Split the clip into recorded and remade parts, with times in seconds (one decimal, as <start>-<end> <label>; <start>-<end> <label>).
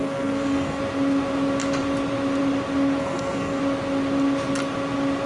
0.0-0.8 remade; 0.8-3.0 recorded; 3.0-3.6 remade; 3.6-5.3 recorded